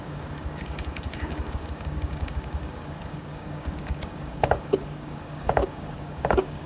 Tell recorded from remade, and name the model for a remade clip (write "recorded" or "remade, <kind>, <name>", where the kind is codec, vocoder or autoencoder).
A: remade, codec, DAC